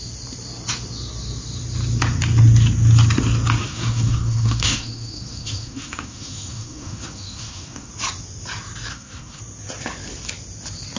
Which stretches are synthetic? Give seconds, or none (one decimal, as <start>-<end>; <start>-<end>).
3.6-7.9; 8.9-9.4